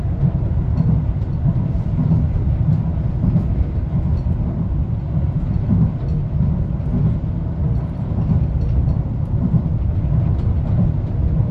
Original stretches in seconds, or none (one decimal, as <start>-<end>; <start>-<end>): 0.0-11.5